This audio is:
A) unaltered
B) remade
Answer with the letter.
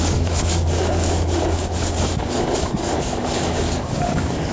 B